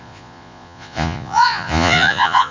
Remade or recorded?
remade